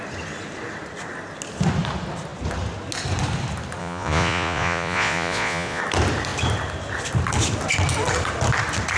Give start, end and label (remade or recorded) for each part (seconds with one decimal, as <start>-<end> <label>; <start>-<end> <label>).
0.0-3.8 recorded; 3.8-5.8 remade; 5.8-9.0 recorded